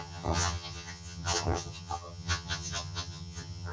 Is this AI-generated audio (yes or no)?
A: yes